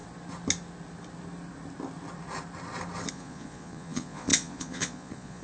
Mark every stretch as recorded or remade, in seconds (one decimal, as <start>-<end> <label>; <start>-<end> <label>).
0.0-3.1 recorded; 3.1-5.4 remade